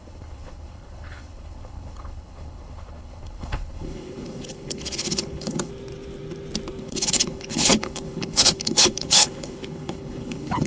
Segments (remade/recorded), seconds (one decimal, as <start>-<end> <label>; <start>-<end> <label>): 0.0-5.7 remade; 5.7-6.8 recorded; 6.8-10.7 remade